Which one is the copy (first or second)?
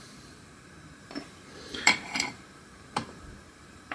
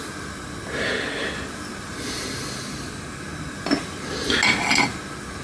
first